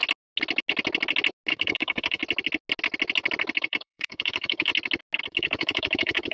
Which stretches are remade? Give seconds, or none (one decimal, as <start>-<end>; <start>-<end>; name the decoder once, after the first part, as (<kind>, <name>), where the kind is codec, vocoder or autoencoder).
1.5-2.2 (codec, DAC); 3.6-4.7; 5.3-6.3